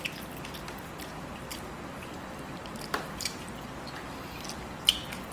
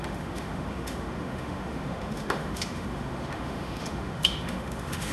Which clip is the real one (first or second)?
first